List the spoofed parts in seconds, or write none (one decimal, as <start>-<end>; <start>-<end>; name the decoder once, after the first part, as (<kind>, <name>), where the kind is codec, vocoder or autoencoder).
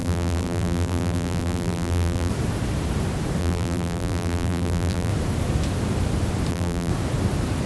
0.0-2.3 (vocoder, BigVGAN v2); 3.4-5.1; 6.5-6.9